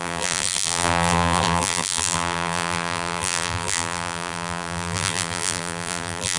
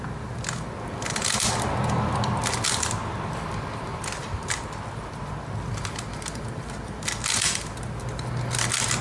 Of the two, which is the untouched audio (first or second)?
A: second